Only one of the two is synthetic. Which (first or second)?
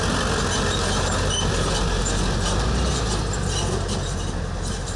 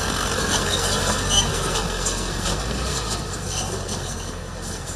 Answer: second